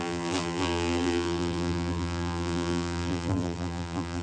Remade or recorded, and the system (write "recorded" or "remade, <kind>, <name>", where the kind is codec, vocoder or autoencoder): remade, vocoder, BigVGAN v2